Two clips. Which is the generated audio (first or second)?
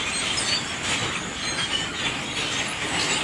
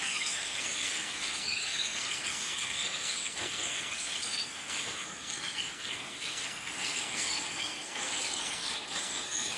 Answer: second